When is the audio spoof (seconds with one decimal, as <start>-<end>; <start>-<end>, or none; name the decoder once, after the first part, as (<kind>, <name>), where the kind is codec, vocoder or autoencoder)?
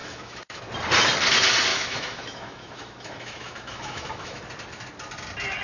0.0-0.6 (autoencoder, DAC-VAE); 1.7-4.4